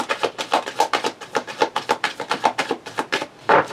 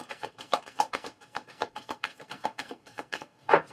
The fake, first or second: second